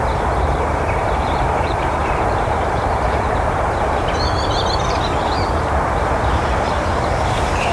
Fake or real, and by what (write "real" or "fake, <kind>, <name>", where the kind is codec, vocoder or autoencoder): fake, vocoder, BigVGAN v2